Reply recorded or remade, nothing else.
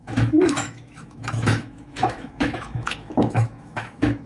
remade